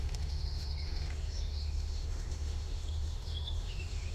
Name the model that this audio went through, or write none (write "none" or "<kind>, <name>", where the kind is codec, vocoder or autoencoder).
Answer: autoencoder, DAC-VAE